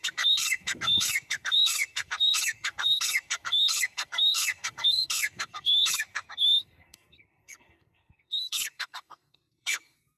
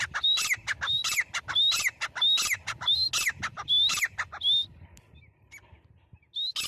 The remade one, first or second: first